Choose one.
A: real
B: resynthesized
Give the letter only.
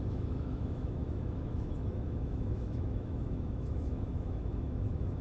B